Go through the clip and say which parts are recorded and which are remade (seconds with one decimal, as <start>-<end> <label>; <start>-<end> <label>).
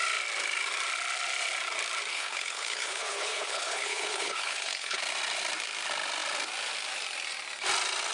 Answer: 0.0-2.1 recorded; 2.1-5.0 remade; 5.0-8.1 recorded